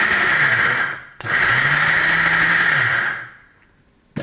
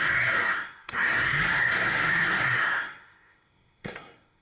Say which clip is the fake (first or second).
second